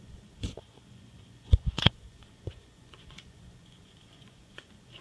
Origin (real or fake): fake